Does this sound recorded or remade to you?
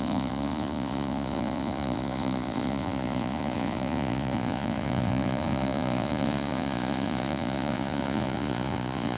remade